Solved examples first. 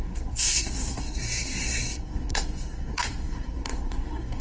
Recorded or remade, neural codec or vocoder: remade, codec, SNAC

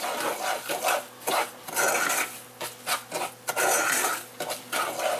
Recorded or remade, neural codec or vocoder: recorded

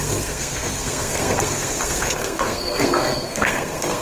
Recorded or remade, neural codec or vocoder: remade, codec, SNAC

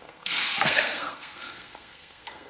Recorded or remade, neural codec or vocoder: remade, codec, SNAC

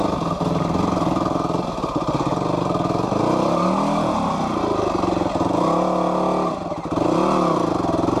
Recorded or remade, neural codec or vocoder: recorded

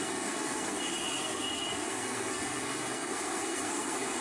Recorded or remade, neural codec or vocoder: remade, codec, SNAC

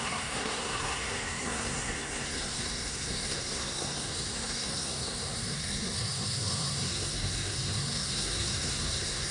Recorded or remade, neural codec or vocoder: remade, codec, SNAC